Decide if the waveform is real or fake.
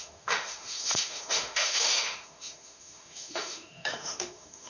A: fake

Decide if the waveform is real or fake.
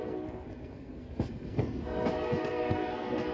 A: fake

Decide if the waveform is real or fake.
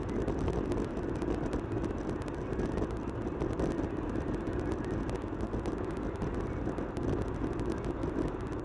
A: real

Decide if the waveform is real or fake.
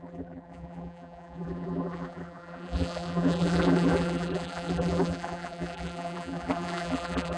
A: fake